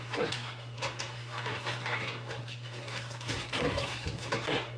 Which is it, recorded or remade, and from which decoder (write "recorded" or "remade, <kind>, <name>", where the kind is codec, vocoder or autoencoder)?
remade, codec, SNAC